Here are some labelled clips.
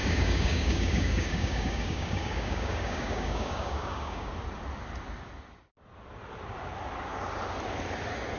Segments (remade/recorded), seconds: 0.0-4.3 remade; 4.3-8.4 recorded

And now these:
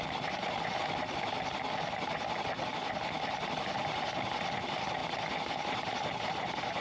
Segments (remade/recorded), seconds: 0.0-6.8 recorded

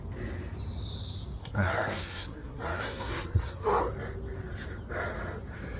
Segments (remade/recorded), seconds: 0.0-1.4 recorded; 1.4-3.8 remade; 3.8-5.8 recorded